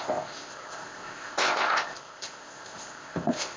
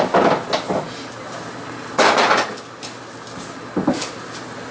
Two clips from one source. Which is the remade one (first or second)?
first